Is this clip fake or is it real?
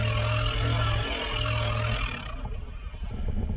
real